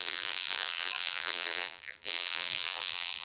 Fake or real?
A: fake